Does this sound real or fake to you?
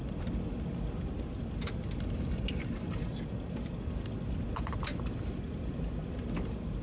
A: real